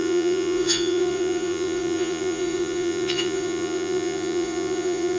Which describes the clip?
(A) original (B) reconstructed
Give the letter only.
B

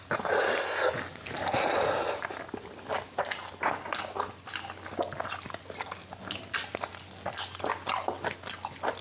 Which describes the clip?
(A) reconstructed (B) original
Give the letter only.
B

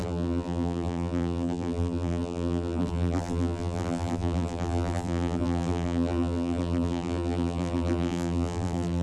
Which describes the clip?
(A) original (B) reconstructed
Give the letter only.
B